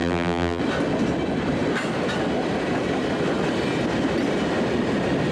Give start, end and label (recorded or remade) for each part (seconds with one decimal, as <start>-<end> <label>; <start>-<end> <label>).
0.0-0.6 remade; 0.6-5.3 recorded